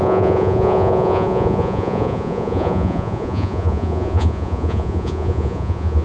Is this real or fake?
fake